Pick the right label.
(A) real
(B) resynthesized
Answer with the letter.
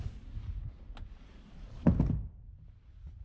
A